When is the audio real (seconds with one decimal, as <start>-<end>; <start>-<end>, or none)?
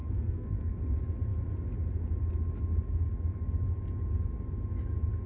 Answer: 0.8-5.3